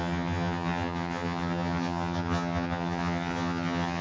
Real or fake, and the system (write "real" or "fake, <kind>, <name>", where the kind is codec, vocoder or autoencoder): fake, vocoder, HiFi-GAN